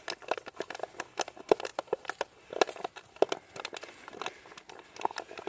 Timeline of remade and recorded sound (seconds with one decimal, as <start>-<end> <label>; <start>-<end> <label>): 0.0-5.5 recorded